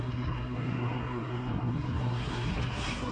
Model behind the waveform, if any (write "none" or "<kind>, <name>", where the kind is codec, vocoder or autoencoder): codec, SNAC